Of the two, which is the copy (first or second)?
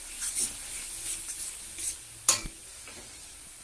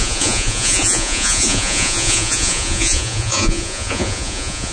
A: second